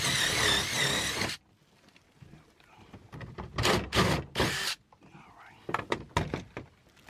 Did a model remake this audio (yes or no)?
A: no